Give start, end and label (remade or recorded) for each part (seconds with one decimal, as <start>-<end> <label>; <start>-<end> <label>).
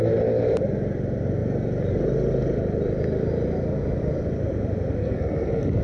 0.0-5.0 recorded; 5.0-5.8 remade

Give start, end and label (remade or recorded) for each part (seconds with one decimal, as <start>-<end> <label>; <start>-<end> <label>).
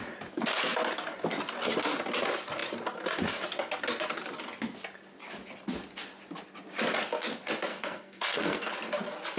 0.0-7.7 recorded; 7.7-8.7 remade; 8.7-9.4 recorded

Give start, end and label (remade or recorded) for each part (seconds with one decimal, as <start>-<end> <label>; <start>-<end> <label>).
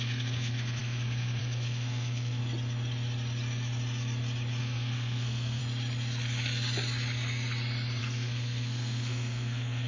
0.0-2.4 remade; 2.4-4.6 recorded; 4.6-5.6 remade; 5.6-8.0 recorded; 8.0-9.9 remade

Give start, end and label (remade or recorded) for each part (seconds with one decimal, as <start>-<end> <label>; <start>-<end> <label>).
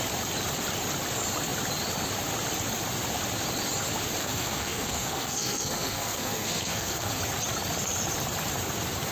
0.0-4.2 recorded; 4.2-7.2 remade; 7.2-9.1 recorded